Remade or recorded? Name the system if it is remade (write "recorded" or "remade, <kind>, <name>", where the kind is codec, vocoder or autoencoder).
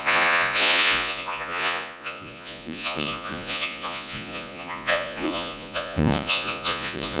remade, vocoder, Vocos